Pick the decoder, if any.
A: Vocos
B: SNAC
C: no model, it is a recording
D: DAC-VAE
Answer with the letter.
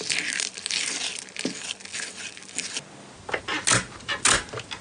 C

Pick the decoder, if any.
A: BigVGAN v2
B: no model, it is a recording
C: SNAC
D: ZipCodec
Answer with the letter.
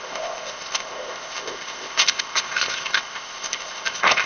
D